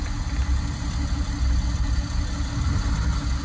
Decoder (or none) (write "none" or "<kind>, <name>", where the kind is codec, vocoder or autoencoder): none